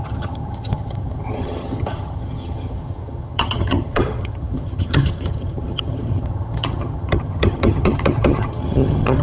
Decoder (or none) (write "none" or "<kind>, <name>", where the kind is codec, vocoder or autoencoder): vocoder, HiFi-GAN